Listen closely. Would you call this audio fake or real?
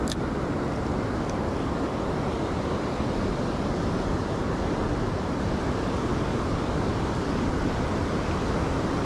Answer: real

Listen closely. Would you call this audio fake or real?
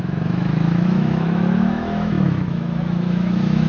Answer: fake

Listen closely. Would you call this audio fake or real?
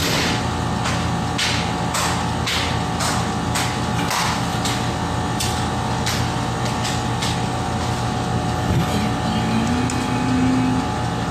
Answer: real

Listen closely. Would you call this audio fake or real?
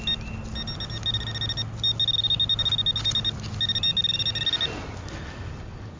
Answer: real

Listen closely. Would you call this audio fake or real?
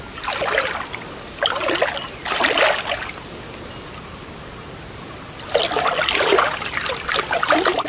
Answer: real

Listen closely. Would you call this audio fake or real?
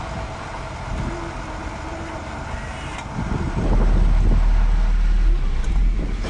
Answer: real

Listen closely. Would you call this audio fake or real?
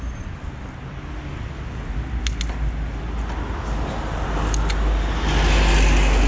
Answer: real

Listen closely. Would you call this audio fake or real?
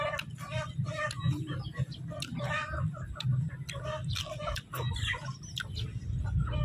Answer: real